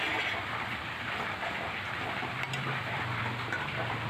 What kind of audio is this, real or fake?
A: fake